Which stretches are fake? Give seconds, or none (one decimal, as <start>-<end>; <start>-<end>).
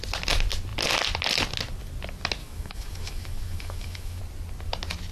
2.4-4.2